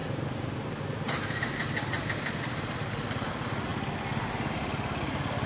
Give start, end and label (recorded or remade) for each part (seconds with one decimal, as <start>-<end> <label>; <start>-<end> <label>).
0.0-5.5 recorded